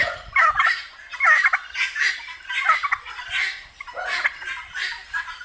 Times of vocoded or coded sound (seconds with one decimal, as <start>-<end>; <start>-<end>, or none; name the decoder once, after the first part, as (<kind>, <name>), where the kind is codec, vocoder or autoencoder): none